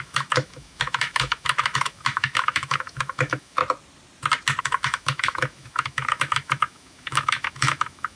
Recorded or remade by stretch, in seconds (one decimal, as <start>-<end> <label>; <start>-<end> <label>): 0.0-3.6 remade; 3.6-4.6 recorded; 4.6-8.2 remade